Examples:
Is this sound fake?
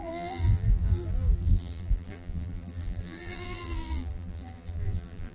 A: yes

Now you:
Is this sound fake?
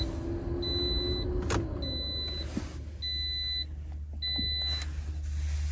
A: no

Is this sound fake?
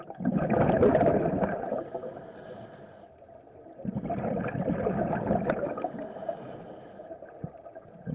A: no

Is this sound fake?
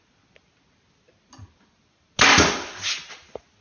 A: no